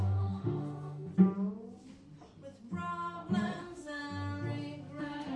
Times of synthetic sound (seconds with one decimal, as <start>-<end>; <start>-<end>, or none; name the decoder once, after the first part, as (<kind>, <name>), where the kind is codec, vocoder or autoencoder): 0.0-1.1 (autoencoder, DAC-VAE); 3.6-4.0; 5.0-5.4